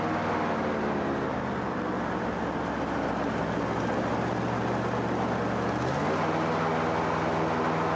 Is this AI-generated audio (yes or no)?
no